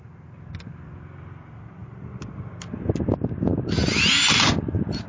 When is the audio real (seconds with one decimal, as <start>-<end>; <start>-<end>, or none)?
0.0-5.1

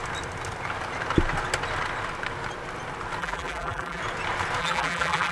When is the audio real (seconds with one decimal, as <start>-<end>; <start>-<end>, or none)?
0.0-3.2; 4.0-4.6

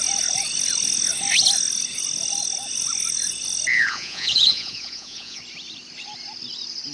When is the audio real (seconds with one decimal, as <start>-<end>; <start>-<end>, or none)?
0.0-3.7; 5.4-6.9